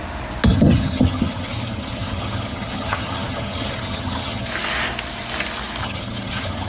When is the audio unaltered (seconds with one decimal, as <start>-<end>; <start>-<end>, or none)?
0.0-0.5; 4.5-5.8